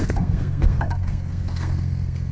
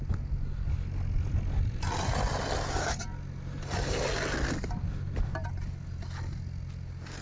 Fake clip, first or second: first